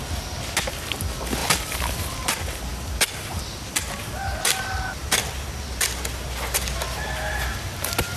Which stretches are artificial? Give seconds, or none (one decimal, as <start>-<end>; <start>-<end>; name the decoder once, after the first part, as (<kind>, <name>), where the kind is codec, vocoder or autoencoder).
1.4-2.3 (vocoder, BigVGAN v2)